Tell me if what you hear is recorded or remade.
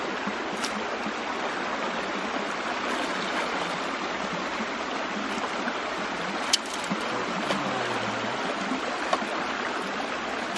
recorded